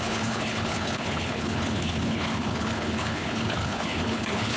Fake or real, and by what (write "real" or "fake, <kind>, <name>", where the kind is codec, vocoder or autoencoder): fake, codec, HILCodec